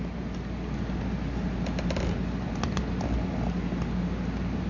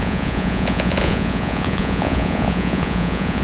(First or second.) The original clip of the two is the first